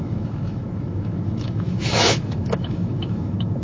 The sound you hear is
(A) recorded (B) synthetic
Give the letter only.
B